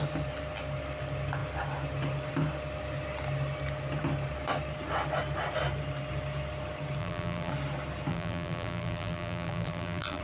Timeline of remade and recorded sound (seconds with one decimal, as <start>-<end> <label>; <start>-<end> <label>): 0.0-7.0 recorded; 7.0-7.5 remade; 7.5-8.1 recorded; 8.1-10.2 remade